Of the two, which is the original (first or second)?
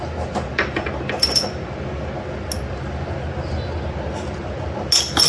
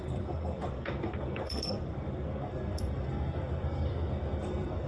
first